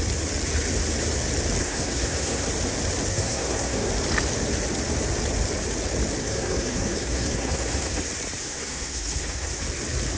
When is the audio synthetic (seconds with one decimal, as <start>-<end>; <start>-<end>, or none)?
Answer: 1.6-2.5; 3.1-3.9; 6.2-8.0; 8.4-9.6